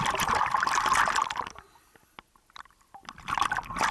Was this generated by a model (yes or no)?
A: no